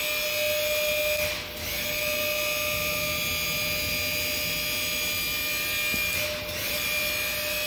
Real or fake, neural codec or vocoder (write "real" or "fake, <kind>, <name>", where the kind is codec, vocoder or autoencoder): real